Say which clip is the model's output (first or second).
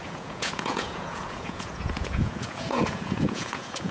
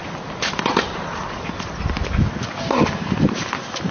first